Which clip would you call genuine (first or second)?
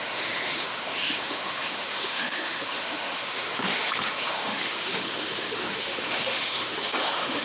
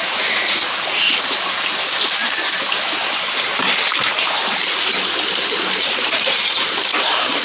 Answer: second